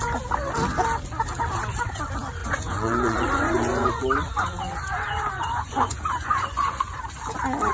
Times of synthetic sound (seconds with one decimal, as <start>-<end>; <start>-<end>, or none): 2.4-7.0